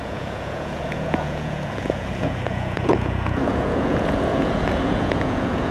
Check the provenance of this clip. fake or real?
fake